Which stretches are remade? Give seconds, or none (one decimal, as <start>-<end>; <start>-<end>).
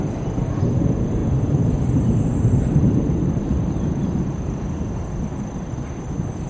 1.2-4.8